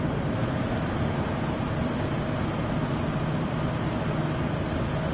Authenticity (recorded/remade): recorded